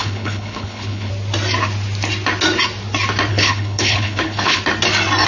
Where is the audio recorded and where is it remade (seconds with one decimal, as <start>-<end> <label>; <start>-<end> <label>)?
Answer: 0.0-1.1 remade; 1.1-3.3 recorded; 3.3-4.6 remade; 4.6-5.3 recorded